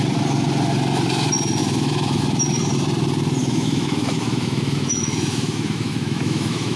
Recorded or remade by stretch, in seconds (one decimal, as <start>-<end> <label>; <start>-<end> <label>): 0.0-1.6 recorded; 1.6-2.2 remade; 2.2-3.4 recorded; 3.4-6.8 remade